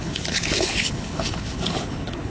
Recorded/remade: remade